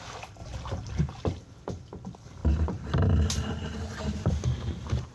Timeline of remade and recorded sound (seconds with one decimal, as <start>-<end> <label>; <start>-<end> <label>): 0.0-0.4 recorded; 0.4-1.0 remade; 1.0-2.4 recorded; 2.4-4.3 remade; 4.3-5.1 recorded